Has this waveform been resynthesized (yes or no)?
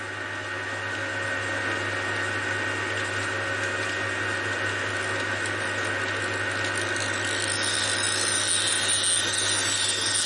no